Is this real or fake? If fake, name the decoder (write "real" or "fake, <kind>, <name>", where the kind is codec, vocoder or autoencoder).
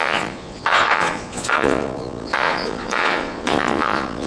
fake, vocoder, Vocos